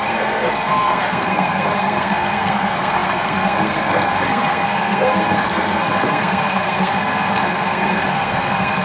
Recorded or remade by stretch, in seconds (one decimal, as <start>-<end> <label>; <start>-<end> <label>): 0.0-8.8 remade

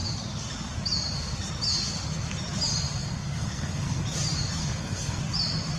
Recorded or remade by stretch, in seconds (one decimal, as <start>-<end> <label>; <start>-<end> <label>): 0.0-3.0 recorded; 3.0-4.0 remade; 4.0-4.6 recorded; 4.6-5.2 remade; 5.2-5.8 recorded

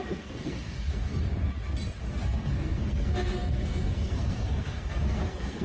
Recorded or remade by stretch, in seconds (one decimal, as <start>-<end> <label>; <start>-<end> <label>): 0.0-1.1 remade; 1.1-2.1 recorded; 2.1-5.6 remade

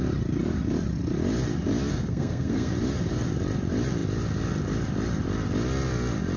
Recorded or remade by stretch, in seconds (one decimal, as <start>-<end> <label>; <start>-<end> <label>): 0.0-1.9 recorded; 1.9-2.7 remade; 2.7-6.4 recorded

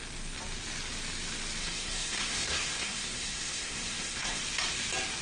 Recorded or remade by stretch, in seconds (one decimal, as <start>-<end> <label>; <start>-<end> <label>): 0.0-1.6 recorded; 1.6-4.4 remade; 4.4-5.2 recorded